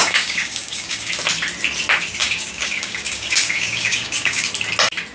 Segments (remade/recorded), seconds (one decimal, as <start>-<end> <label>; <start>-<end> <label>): 0.0-1.1 remade; 1.1-2.2 recorded; 2.2-4.5 remade; 4.5-5.1 recorded